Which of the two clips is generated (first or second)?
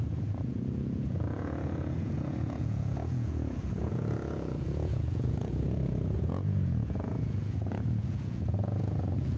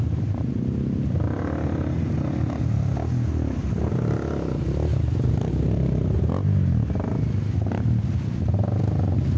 first